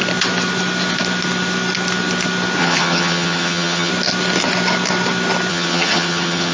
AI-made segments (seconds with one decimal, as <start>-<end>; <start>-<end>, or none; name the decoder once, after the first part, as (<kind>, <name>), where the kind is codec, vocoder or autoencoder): 2.6-3.9 (vocoder, HiFi-GAN); 5.5-6.5